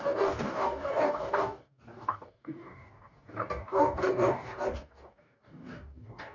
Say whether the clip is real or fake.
fake